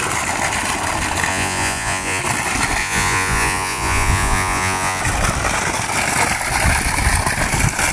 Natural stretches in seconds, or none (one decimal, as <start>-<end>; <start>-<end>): 0.0-1.3; 2.2-2.8; 5.0-7.9